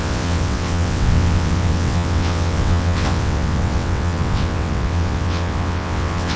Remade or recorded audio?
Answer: remade